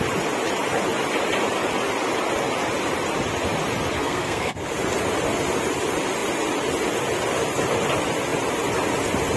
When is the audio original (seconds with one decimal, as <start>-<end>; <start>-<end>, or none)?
0.0-4.0; 4.6-9.4